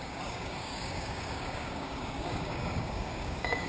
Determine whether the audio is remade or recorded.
remade